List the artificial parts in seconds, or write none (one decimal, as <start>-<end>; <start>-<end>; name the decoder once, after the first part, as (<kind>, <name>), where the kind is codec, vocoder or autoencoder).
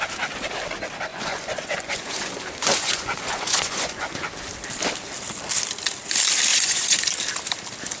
1.1-4.1 (vocoder, Vocos); 6.5-7.1